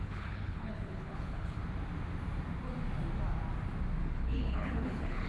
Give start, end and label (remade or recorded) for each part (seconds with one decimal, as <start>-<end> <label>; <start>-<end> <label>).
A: 0.0-1.6 remade; 1.6-4.0 recorded; 4.0-5.3 remade